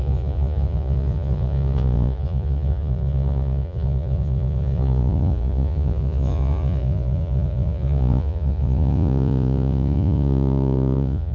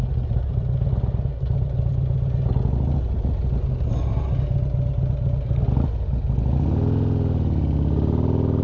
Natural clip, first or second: second